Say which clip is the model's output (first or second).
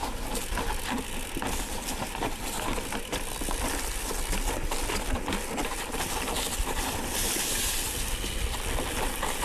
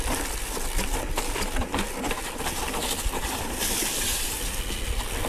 first